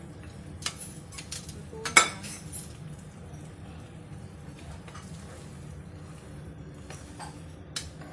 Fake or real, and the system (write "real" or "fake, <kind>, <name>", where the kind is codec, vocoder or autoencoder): real